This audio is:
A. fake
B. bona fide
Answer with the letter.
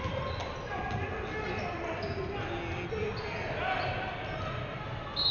B